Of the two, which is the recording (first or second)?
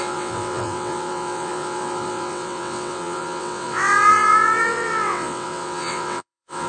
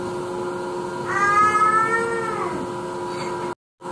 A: second